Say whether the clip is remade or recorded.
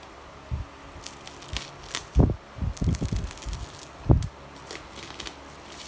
recorded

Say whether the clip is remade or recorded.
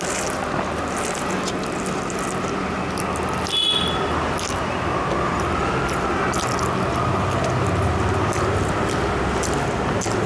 recorded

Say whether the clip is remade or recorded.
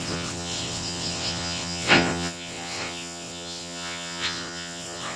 remade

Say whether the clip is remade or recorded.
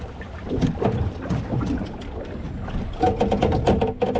recorded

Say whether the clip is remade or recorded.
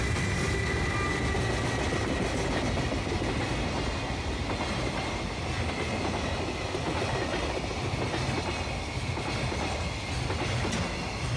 recorded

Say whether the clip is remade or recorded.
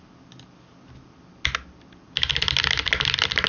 recorded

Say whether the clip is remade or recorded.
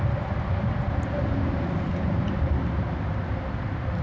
recorded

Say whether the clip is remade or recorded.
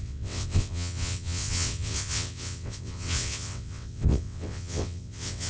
remade